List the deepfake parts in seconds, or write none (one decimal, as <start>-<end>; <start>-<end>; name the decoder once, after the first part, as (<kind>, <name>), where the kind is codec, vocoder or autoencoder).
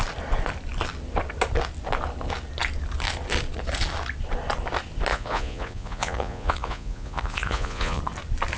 5.1-8.0 (vocoder, Vocos)